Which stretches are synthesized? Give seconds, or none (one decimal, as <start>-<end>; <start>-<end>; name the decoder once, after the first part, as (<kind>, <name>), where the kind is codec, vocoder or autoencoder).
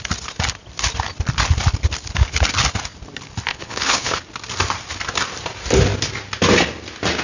3.5-4.2 (codec, HILCodec)